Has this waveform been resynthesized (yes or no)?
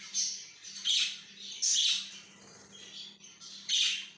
no